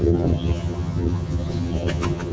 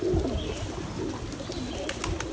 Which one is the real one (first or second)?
second